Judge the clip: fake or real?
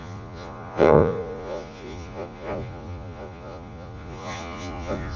fake